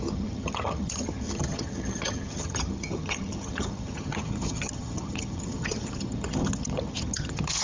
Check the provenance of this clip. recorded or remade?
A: remade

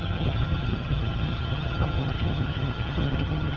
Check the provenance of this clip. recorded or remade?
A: remade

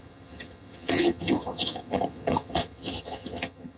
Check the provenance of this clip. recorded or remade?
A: remade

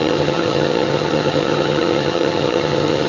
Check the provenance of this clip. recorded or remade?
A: remade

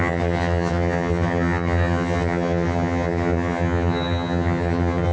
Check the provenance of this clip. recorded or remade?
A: remade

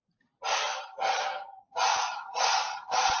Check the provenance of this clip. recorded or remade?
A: recorded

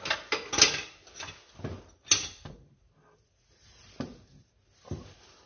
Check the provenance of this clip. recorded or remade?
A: recorded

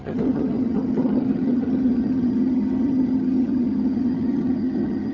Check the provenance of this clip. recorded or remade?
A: remade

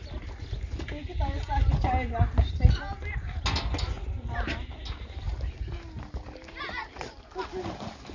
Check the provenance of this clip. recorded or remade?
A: recorded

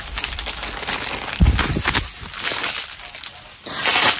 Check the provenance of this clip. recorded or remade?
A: recorded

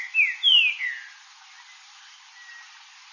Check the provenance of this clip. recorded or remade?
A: recorded